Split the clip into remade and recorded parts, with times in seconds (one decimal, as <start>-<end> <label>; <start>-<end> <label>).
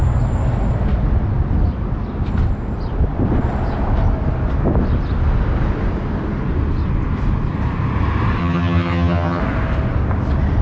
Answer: 0.0-8.4 recorded; 8.4-9.4 remade; 9.4-10.6 recorded